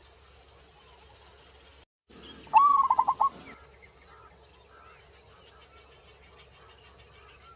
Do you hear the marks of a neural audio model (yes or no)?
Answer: no